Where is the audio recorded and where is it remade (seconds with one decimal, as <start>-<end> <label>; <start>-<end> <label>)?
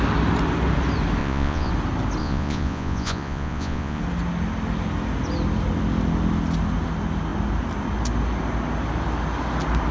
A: 0.0-1.2 recorded; 1.2-1.7 remade; 1.7-2.2 recorded; 2.2-4.0 remade; 4.0-9.9 recorded